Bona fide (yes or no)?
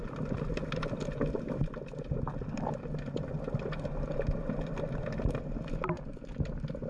yes